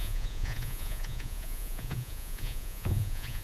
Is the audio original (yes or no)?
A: no